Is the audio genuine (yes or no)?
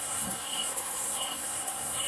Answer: no